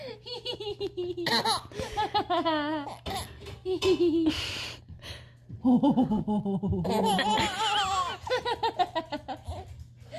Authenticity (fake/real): real